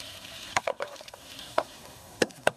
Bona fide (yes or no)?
no